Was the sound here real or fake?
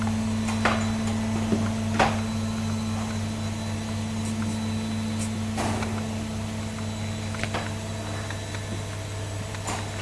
real